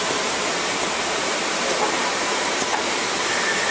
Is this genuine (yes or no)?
no